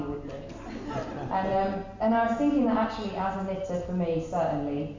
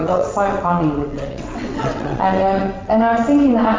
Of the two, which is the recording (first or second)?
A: first